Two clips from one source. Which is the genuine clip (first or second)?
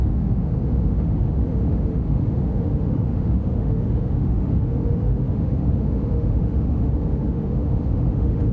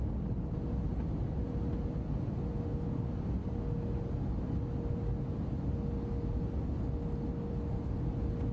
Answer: second